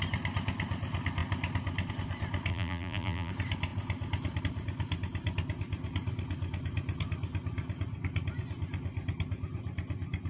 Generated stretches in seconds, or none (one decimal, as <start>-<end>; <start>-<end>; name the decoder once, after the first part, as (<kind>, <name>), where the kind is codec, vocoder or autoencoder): 2.5-3.3 (vocoder, BigVGAN v2)